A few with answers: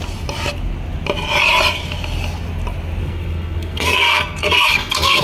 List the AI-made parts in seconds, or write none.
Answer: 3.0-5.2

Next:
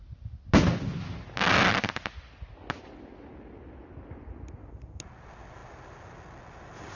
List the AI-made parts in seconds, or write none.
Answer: none

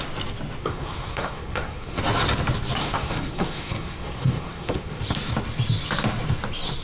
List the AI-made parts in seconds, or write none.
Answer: 0.6-2.0; 2.8-5.0

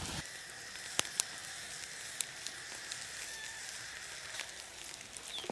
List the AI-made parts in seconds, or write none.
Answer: none